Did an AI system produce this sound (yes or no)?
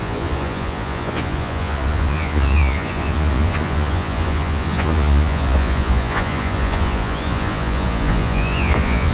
yes